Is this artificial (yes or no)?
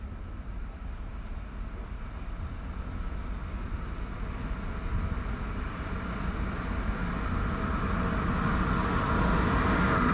no